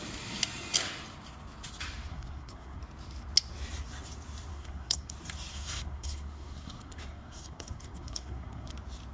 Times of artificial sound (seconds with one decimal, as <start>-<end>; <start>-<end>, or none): 2.1-2.8; 4.5-5.1; 5.5-8.7